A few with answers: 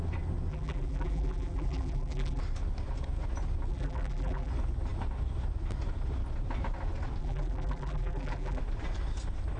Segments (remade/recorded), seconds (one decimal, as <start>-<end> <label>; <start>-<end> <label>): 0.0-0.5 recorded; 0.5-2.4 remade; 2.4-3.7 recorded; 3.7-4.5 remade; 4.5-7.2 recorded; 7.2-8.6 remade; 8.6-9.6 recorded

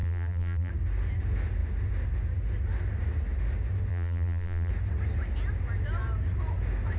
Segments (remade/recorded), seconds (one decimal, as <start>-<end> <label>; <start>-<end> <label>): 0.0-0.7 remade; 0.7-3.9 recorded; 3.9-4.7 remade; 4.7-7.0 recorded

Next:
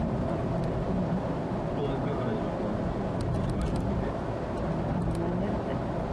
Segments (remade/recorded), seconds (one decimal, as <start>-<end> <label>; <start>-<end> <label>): 0.0-1.8 remade; 1.8-4.7 recorded; 4.7-6.1 remade

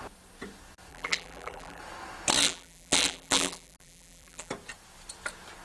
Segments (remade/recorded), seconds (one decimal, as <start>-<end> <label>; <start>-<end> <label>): 0.0-0.9 recorded; 0.9-1.8 remade; 1.8-2.4 recorded; 2.4-4.5 remade; 4.5-5.6 recorded